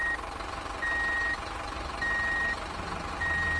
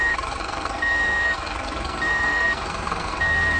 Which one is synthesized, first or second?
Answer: second